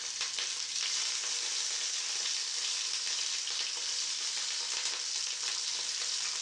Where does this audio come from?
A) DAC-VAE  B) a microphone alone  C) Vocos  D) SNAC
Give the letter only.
B